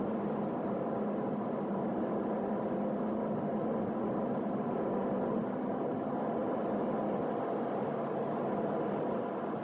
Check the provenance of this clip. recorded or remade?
recorded